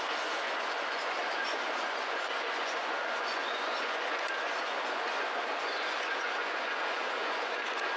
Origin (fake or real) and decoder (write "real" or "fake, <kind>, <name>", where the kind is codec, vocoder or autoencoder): fake, vocoder, Vocos